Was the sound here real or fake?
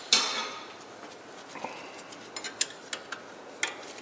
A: real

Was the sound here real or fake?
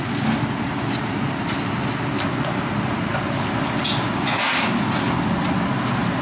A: real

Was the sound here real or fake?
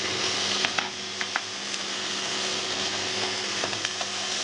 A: fake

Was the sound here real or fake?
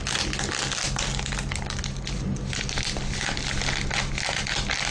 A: real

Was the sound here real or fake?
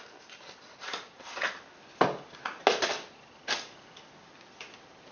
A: real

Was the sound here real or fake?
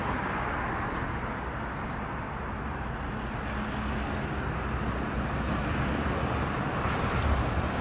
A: real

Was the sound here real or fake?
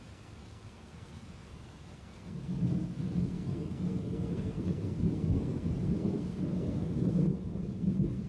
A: fake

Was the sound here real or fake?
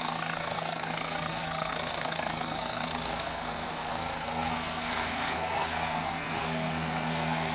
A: fake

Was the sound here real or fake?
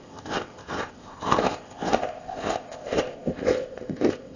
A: fake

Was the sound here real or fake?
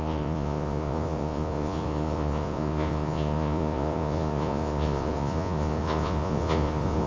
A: fake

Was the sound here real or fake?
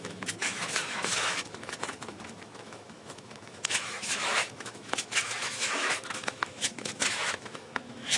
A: fake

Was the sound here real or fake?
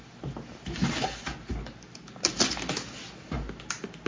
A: real